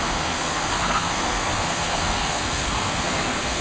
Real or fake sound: fake